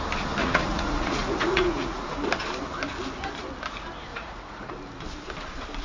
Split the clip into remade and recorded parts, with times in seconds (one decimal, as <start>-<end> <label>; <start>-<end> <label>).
0.0-0.4 recorded; 0.4-2.2 remade; 2.2-4.1 recorded; 4.1-4.7 remade; 4.7-5.8 recorded